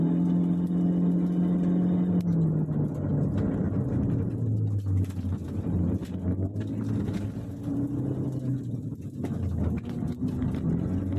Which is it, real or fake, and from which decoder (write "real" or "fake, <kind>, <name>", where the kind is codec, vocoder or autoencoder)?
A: real